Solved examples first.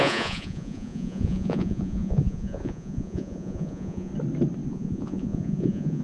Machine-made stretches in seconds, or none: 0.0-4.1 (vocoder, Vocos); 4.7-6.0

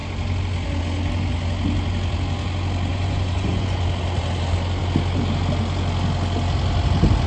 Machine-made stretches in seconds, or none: 2.9-3.8 (vocoder, Vocos)

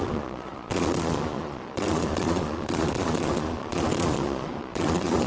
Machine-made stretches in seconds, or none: 0.0-5.3 (vocoder, Vocos)

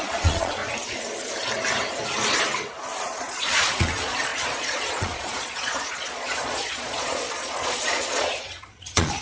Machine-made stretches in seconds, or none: 0.0-0.6 (vocoder, Vocos); 3.0-9.2

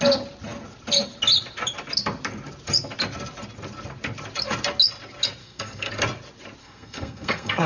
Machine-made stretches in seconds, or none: 5.4-5.9 (codec, SNAC); 6.6-7.7